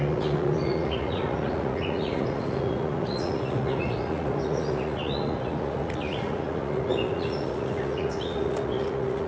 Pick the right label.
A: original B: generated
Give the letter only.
B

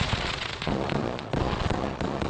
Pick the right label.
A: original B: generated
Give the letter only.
B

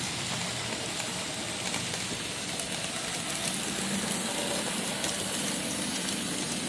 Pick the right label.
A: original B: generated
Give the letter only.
A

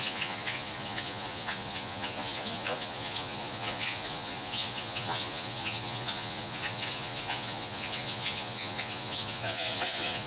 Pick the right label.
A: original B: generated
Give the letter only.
B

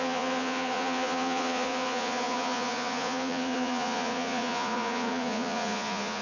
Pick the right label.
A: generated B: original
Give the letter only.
A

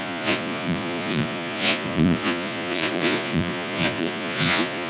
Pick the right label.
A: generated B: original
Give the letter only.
A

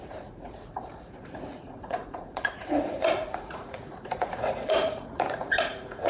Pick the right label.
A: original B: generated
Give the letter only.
B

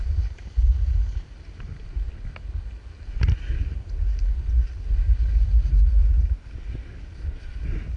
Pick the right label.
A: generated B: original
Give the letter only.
B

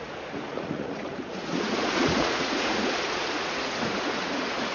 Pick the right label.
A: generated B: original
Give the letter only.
A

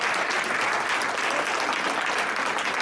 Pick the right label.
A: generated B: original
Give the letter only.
B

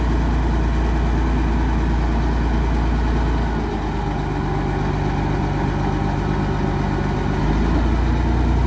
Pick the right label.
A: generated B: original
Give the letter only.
B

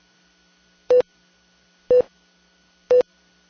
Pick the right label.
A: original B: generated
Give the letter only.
A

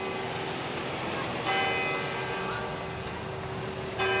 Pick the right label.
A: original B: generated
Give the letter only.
A